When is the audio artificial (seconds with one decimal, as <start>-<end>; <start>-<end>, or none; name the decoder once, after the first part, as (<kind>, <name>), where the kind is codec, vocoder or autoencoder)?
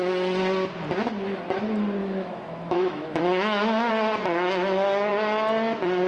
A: 2.0-3.9 (autoencoder, DAC-VAE)